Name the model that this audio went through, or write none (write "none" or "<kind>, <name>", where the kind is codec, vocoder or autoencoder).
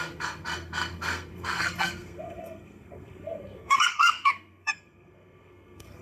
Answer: codec, SNAC